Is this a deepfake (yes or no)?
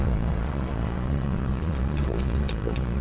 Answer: yes